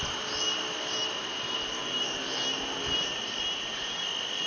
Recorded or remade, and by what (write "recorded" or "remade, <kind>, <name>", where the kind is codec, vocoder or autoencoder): recorded